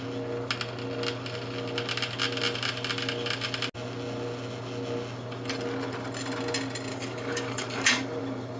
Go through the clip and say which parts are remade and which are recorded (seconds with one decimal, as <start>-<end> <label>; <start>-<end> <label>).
0.0-6.9 recorded; 6.9-8.2 remade; 8.2-8.6 recorded